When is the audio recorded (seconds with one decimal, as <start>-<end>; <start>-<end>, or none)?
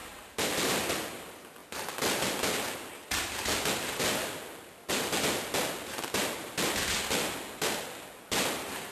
0.7-8.9